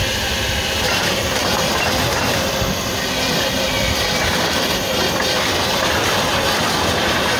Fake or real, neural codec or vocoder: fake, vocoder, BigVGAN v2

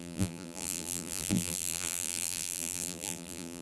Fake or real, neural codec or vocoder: fake, vocoder, BigVGAN v2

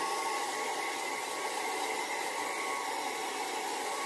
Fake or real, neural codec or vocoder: fake, vocoder, BigVGAN v2